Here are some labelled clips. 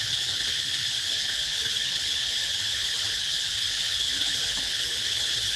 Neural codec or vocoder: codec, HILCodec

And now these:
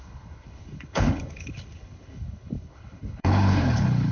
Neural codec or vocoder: codec, HILCodec